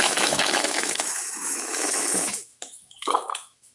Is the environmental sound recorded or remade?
remade